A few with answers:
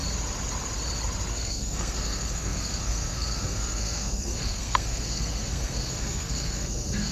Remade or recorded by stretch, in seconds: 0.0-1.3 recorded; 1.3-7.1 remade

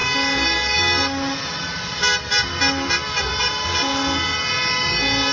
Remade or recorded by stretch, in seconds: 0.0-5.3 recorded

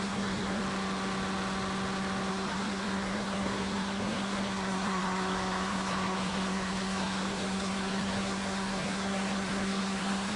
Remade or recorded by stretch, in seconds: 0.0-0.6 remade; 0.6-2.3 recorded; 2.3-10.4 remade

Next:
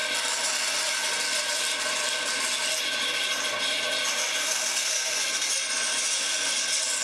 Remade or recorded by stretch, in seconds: 0.0-4.4 recorded; 4.4-5.5 remade; 5.5-7.0 recorded